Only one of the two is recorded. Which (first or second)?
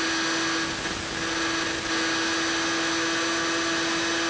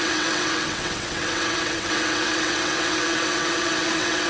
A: first